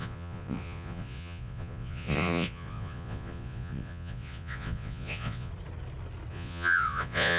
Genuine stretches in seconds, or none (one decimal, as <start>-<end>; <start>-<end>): 5.5-6.3